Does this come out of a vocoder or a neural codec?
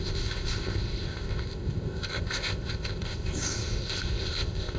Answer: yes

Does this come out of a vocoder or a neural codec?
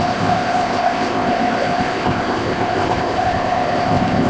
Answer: yes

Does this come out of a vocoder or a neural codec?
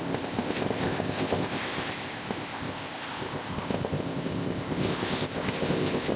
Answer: yes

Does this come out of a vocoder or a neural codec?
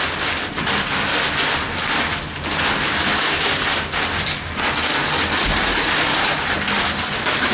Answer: no